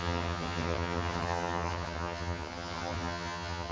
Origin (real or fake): fake